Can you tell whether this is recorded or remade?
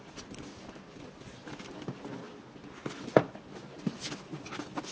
recorded